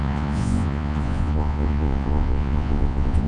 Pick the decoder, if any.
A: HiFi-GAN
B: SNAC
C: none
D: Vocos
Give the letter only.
D